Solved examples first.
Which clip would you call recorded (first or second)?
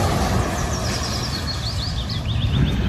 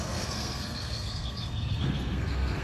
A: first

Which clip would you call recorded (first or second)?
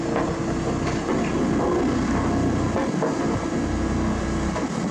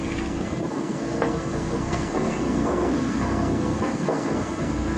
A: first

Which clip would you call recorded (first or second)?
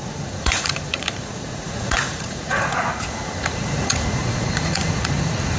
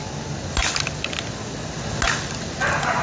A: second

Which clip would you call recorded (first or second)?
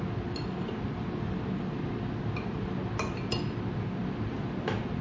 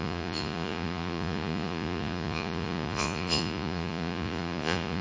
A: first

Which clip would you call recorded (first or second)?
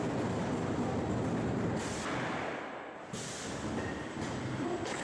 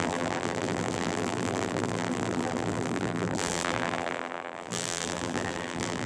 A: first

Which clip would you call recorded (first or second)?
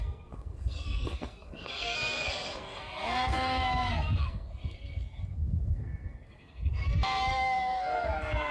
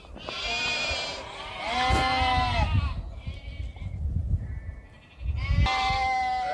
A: second